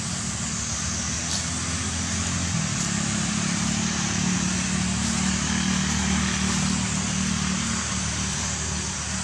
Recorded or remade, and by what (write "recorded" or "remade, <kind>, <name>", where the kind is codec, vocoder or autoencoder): recorded